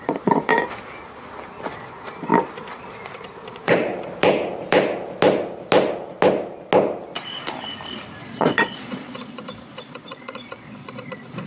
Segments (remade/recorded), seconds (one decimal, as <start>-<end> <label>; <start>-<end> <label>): 0.0-0.5 remade; 0.5-1.8 recorded; 1.8-2.3 remade; 2.3-3.5 recorded; 3.5-3.9 remade; 3.9-8.2 recorded; 8.2-11.5 remade